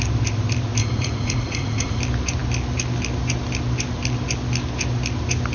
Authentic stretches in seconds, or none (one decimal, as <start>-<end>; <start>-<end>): 0.0-0.8; 2.0-5.5